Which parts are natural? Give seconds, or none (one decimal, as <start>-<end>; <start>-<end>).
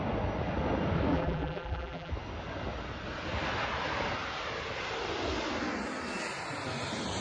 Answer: 0.0-1.1; 2.1-7.2